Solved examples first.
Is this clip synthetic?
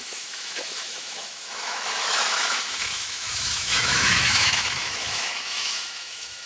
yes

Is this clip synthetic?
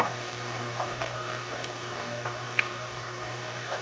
yes